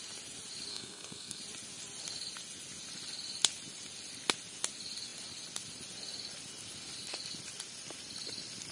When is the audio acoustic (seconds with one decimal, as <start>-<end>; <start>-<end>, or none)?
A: 0.0-0.7; 1.4-8.7